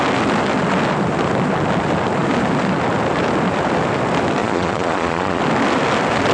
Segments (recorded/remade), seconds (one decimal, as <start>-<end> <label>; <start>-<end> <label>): 0.0-4.4 recorded; 4.4-5.4 remade; 5.4-6.3 recorded